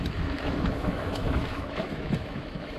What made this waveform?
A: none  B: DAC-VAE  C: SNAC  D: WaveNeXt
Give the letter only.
B